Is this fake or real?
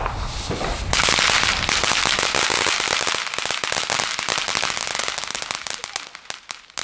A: real